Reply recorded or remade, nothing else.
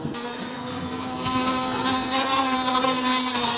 remade